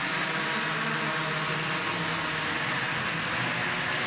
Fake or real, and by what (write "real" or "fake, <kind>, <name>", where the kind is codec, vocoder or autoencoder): real